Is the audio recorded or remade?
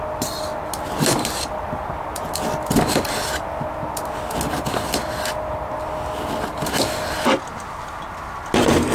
recorded